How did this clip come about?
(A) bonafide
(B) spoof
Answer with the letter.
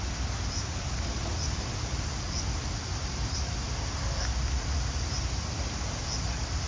A